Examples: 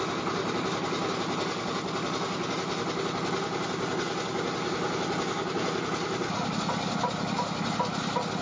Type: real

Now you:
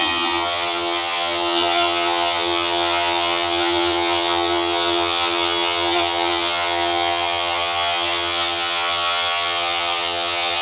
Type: fake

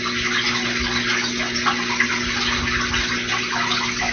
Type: real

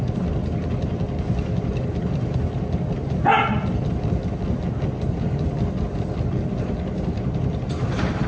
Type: real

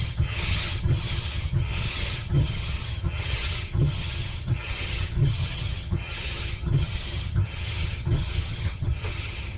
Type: fake